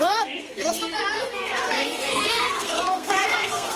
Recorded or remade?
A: remade